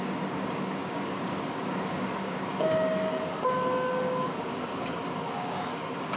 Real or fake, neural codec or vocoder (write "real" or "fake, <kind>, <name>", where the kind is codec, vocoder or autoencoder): fake, codec, DAC